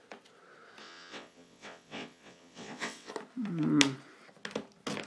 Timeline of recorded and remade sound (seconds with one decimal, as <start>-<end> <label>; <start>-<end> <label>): 0.0-0.8 recorded; 0.8-3.1 remade; 3.1-5.1 recorded

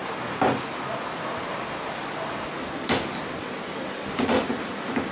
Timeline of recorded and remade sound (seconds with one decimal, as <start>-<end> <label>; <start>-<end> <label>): 0.0-5.1 recorded

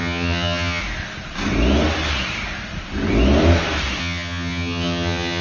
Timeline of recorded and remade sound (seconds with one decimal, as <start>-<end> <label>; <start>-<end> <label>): 0.0-0.8 remade; 0.8-4.0 recorded; 4.0-5.4 remade

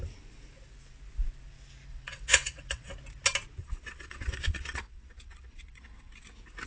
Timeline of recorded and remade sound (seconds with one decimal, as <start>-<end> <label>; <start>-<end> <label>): 0.0-1.9 recorded; 1.9-2.9 remade; 2.9-3.6 recorded; 3.6-6.1 remade; 6.1-6.7 recorded

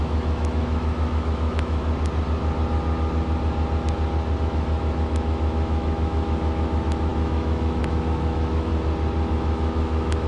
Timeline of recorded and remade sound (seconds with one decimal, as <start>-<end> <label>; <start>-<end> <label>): 0.0-1.8 remade; 1.8-4.4 recorded; 4.4-8.7 remade; 8.7-9.3 recorded; 9.3-10.3 remade

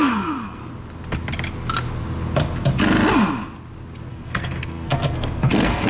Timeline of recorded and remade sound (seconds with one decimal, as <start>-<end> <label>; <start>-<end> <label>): 0.0-0.6 remade; 0.6-4.1 recorded; 4.1-5.9 remade